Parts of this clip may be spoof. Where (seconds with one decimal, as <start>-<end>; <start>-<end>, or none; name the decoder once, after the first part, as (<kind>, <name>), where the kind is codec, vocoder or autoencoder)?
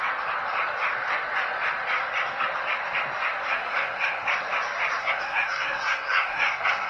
3.5-4.3 (codec, SNAC); 5.0-6.9